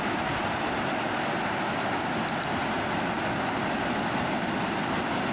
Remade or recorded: recorded